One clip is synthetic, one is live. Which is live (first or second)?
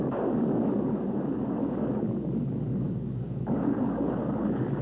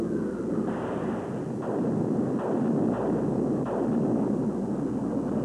second